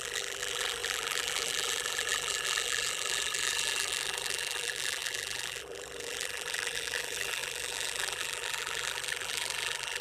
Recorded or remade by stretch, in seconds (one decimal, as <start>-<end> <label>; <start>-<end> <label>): 0.0-10.0 remade